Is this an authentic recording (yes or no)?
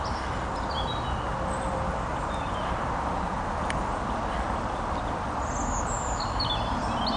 yes